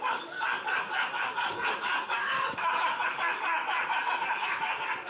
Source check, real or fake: fake